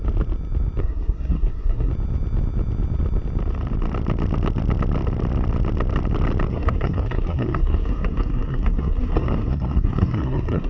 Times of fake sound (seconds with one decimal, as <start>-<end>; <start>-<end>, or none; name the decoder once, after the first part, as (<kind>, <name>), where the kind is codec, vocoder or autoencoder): 0.8-1.9 (codec, SNAC); 6.5-10.7